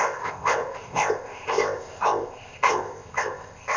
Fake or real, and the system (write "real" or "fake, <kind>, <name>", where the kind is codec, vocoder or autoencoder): fake, codec, ZipCodec